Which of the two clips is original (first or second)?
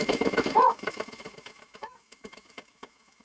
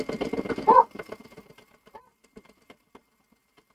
second